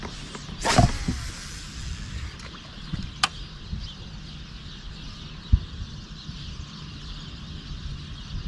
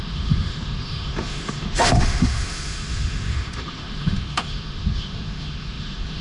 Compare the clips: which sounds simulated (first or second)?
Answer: second